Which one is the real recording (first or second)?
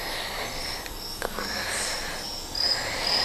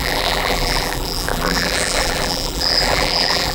first